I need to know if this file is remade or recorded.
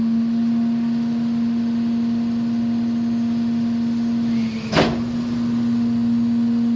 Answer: recorded